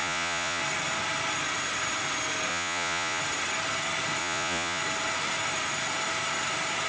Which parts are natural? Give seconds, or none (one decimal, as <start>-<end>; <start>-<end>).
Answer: 0.6-2.5; 3.2-4.2; 4.8-6.9